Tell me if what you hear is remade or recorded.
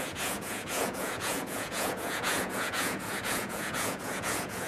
remade